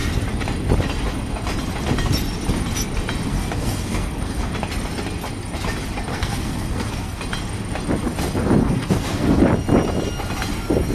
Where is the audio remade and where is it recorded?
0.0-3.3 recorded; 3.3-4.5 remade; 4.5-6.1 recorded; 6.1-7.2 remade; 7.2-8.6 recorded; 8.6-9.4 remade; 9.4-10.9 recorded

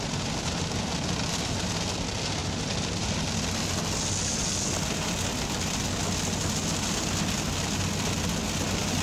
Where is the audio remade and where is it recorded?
0.0-9.0 recorded

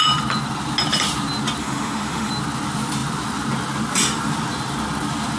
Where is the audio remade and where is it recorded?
0.0-1.6 recorded; 1.6-2.3 remade; 2.3-5.4 recorded